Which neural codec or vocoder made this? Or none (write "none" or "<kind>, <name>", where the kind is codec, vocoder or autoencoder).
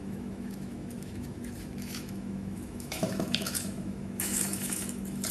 autoencoder, DAC-VAE